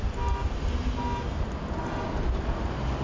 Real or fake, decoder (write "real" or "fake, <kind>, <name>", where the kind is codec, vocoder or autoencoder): real